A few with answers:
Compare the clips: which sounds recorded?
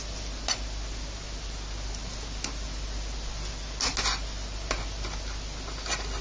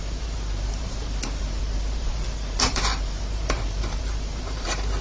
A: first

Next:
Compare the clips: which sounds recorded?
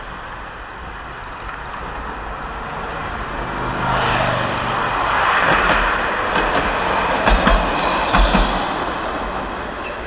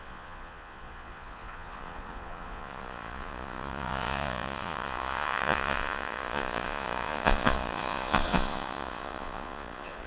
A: first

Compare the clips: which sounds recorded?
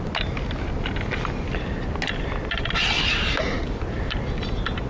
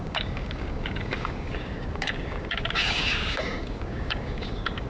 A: first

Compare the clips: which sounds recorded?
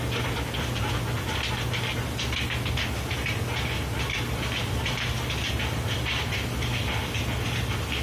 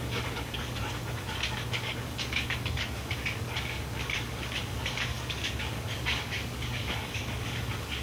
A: first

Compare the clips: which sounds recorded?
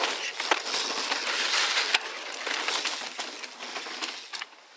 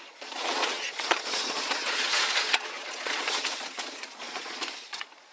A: first